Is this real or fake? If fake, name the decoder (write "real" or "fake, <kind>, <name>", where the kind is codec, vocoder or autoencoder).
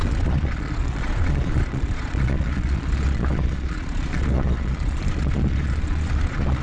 fake, vocoder, Vocos